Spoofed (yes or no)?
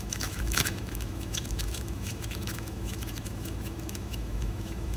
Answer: yes